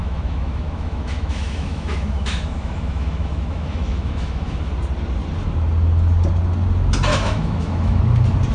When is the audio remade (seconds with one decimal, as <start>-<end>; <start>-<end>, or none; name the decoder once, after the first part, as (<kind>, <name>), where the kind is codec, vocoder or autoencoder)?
0.0-4.7 (autoencoder, DAC-VAE); 7.1-8.0

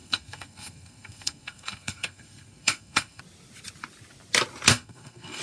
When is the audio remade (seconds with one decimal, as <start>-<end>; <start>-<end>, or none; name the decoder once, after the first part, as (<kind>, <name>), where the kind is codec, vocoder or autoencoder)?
0.0-3.2 (codec, SNAC); 4.7-5.4

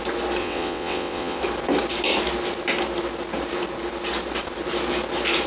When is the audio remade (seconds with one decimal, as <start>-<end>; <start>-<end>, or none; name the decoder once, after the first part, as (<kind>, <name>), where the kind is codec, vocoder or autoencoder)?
0.4-1.4 (vocoder, WaveNeXt)

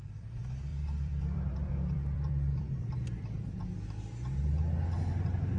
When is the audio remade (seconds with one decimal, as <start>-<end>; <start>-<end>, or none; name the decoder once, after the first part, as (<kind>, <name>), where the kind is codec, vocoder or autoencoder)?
0.7-3.8 (vocoder, BigVGAN v2)

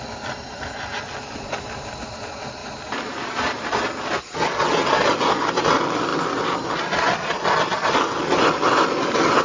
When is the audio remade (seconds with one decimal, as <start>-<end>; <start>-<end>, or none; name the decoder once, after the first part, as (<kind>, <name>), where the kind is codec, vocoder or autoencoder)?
2.6-3.7 (vocoder, BigVGAN v2)